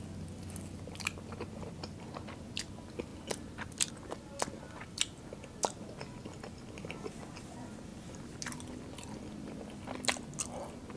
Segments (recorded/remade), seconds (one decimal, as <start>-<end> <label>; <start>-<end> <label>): 0.0-11.0 recorded